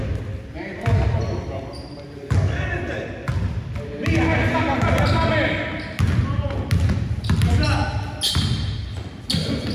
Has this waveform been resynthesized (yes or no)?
no